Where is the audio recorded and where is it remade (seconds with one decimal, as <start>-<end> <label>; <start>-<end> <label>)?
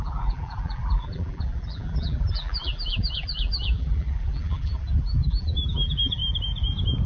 0.0-6.2 remade; 6.2-7.1 recorded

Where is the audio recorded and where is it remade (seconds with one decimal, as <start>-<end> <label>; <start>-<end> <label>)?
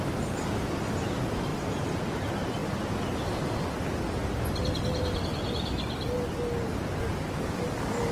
0.0-1.5 recorded; 1.5-2.2 remade; 2.2-8.1 recorded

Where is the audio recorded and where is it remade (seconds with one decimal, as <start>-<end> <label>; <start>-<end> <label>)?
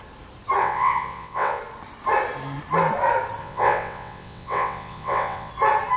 0.0-0.6 recorded; 0.6-1.6 remade; 1.6-3.4 recorded; 3.4-5.5 remade; 5.5-6.0 recorded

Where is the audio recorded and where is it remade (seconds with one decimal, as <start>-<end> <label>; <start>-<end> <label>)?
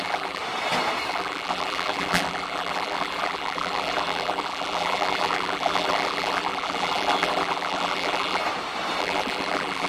0.0-0.4 remade; 0.4-1.1 recorded; 1.1-8.4 remade; 8.4-9.0 recorded; 9.0-9.9 remade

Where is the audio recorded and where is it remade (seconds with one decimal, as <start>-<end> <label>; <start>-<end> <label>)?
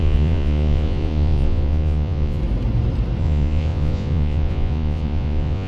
0.0-2.4 remade; 2.4-3.2 recorded; 3.2-5.7 remade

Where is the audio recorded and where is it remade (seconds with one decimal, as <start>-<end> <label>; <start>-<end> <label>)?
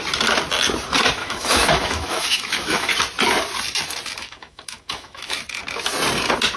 0.0-1.2 recorded; 1.2-2.9 remade; 2.9-4.2 recorded; 4.2-5.6 remade; 5.6-6.6 recorded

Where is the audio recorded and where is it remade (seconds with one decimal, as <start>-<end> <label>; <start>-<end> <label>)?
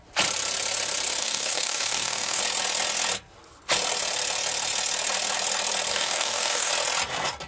0.0-1.2 recorded; 1.2-2.4 remade; 2.4-5.9 recorded; 5.9-6.7 remade; 6.7-7.5 recorded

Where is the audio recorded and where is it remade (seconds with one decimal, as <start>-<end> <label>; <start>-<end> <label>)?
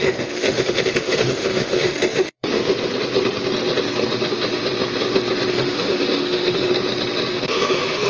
0.0-2.6 remade; 2.6-5.5 recorded; 5.5-6.7 remade; 6.7-7.3 recorded; 7.3-8.1 remade